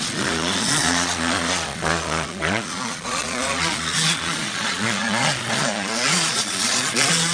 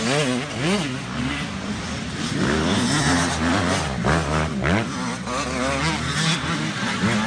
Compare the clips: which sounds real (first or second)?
second